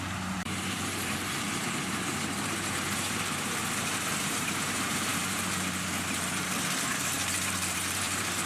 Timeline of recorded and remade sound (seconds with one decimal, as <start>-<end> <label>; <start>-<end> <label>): 0.0-8.5 remade